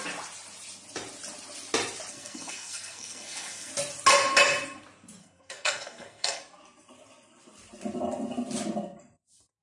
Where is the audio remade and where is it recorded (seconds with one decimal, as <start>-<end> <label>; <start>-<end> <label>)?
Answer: 0.0-2.1 recorded; 2.1-3.7 remade; 3.7-5.2 recorded; 5.2-6.4 remade; 6.4-9.6 recorded